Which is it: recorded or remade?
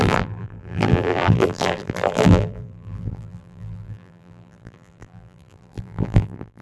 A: remade